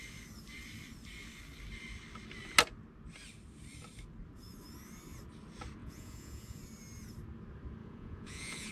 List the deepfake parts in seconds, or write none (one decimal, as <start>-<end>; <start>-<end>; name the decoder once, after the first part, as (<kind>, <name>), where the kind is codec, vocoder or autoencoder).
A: 5.8-6.6 (vocoder, Vocos); 7.8-8.7